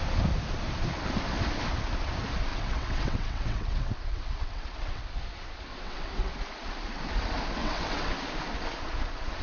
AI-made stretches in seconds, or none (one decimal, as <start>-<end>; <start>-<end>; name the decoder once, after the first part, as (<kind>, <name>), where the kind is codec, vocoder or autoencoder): 2.5-5.0 (vocoder, WaveNeXt); 5.7-6.3; 7.6-8.1